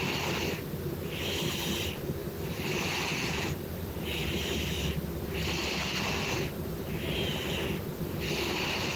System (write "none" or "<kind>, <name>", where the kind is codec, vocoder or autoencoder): none